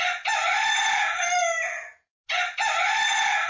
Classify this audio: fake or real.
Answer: real